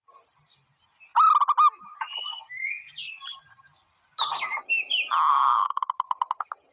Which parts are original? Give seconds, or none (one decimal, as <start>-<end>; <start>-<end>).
0.0-5.3; 5.8-6.7